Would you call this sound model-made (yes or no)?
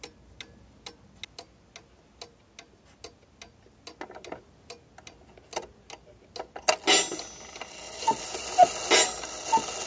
no